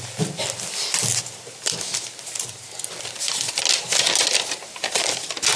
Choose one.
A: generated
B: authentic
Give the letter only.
B